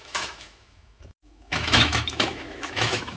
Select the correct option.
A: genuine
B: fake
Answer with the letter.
B